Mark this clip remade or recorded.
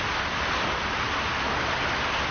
recorded